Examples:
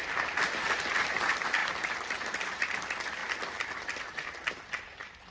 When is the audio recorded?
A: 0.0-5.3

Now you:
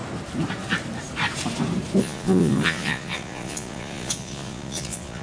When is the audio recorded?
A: 0.0-2.0

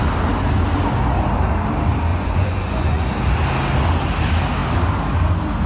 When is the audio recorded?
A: 0.0-2.1; 3.0-5.7

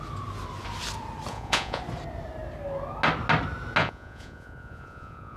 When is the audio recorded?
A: 0.0-1.3; 1.8-3.8

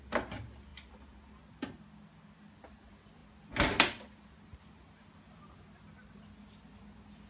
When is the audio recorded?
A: 0.0-7.3

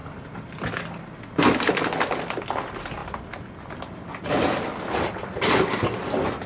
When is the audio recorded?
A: 0.0-6.5

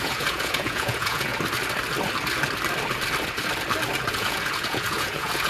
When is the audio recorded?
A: 1.3-4.1

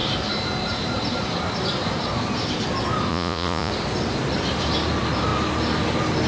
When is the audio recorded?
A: 0.0-3.1; 3.7-6.3